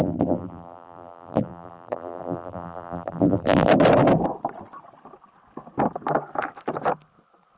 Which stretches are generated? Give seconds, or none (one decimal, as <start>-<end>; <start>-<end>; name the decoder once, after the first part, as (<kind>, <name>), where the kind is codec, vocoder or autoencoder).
0.0-3.7 (vocoder, BigVGAN v2)